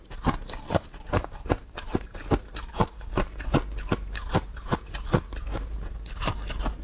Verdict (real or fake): fake